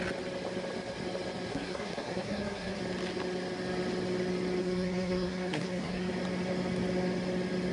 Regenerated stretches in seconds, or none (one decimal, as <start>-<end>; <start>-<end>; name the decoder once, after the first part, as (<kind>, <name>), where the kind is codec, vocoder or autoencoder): 1.5-2.8 (codec, SNAC); 4.6-6.1